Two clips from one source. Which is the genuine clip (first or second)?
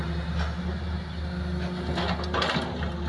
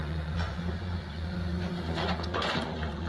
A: first